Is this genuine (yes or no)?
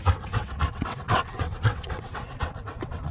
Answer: no